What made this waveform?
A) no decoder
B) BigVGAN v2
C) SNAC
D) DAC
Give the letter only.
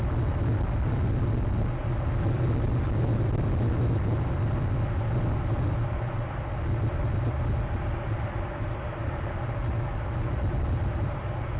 A